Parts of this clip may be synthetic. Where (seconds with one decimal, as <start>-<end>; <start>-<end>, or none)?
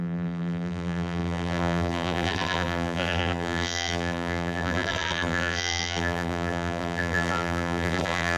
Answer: 0.0-8.4